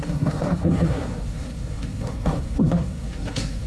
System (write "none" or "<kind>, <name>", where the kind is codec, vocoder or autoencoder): codec, SNAC